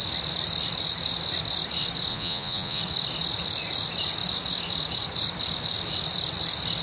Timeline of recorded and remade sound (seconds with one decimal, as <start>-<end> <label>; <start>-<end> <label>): 0.0-2.1 recorded; 2.1-2.8 remade; 2.8-6.8 recorded